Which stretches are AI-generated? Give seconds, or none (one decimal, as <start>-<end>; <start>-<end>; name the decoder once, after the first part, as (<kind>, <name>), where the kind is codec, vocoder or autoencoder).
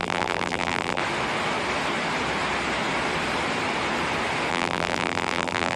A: 0.0-1.0 (vocoder, BigVGAN v2); 4.5-5.8